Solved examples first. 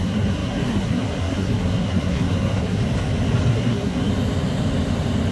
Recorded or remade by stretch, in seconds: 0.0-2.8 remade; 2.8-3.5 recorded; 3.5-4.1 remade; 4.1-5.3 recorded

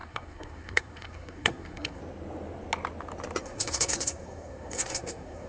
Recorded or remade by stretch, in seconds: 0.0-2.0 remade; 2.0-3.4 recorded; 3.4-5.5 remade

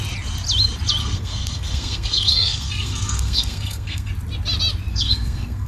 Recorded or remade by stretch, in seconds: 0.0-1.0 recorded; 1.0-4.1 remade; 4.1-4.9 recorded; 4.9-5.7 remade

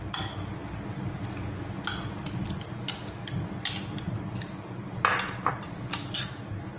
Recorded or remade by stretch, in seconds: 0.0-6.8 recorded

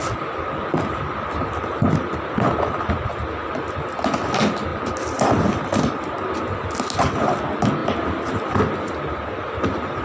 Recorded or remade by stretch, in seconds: 0.0-10.0 recorded